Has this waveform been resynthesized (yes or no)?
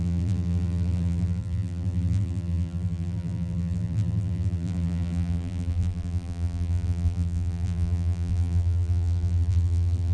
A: yes